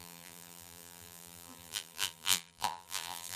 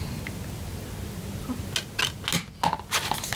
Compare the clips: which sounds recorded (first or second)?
second